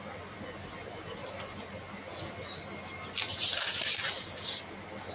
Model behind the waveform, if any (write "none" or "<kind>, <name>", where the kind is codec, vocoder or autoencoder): none